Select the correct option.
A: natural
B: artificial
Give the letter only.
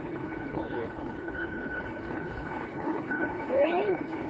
B